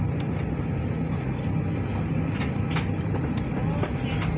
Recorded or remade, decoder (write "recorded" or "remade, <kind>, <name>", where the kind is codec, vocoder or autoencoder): recorded